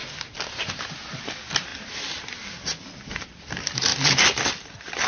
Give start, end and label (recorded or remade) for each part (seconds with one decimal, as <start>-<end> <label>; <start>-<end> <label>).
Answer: 0.0-5.1 recorded